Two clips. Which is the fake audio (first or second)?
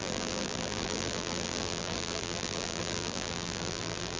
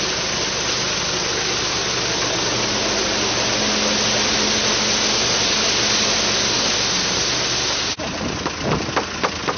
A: first